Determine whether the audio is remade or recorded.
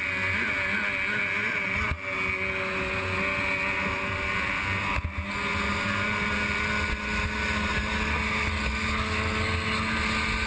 recorded